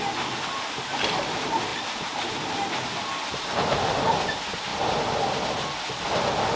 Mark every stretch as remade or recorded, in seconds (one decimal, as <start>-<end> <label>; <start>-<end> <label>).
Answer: 0.0-6.6 recorded

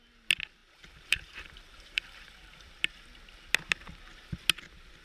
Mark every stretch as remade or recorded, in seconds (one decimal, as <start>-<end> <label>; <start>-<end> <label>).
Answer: 0.0-0.6 recorded; 0.6-2.7 remade; 2.7-5.0 recorded

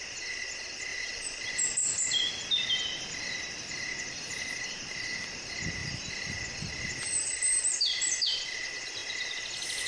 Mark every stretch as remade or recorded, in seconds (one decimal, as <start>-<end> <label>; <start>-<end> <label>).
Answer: 0.0-0.9 recorded; 0.9-2.0 remade; 2.0-5.8 recorded; 5.8-7.6 remade; 7.6-9.9 recorded